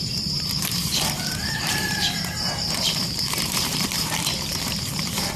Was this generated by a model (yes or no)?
yes